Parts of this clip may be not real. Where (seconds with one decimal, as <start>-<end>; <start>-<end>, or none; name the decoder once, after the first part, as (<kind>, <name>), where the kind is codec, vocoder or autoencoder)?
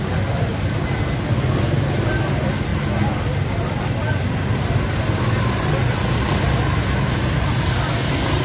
none